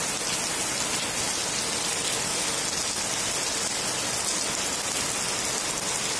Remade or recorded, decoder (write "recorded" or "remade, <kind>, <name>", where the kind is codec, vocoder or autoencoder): recorded